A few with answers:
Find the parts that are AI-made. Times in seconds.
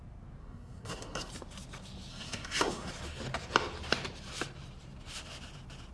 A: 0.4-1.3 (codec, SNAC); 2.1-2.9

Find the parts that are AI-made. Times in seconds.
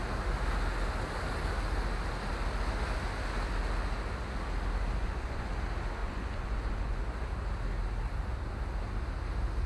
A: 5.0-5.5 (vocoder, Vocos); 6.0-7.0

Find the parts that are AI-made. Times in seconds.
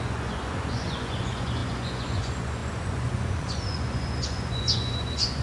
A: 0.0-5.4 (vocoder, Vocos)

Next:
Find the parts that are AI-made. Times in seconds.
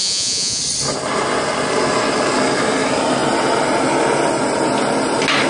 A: 0.0-0.6 (vocoder, Vocos)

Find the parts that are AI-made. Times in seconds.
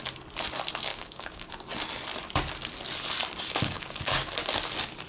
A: 0.9-1.5 (codec, DAC); 3.6-4.2